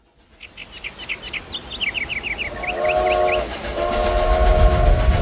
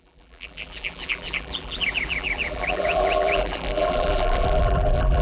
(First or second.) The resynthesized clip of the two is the second